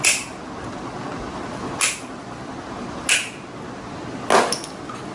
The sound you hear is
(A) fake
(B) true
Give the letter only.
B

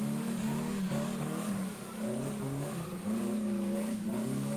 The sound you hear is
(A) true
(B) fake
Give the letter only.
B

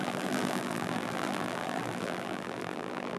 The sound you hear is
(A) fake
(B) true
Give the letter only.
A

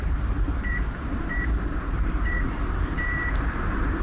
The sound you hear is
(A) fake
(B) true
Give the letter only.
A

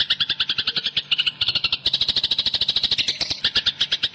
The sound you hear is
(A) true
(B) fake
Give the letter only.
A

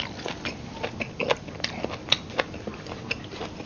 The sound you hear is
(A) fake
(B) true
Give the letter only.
B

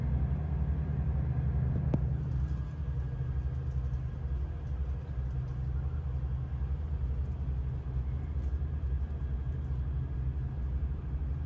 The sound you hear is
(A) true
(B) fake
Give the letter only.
A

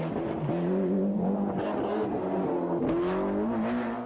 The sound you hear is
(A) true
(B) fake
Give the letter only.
A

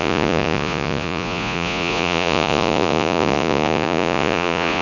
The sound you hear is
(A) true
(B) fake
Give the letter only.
B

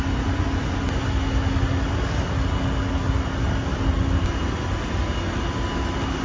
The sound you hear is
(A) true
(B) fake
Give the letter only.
A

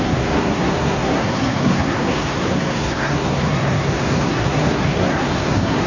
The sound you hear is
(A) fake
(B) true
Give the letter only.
A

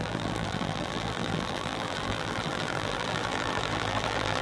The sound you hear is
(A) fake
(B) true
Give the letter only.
A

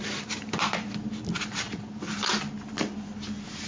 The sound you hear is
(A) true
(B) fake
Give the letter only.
A